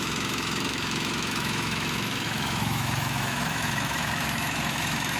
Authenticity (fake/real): fake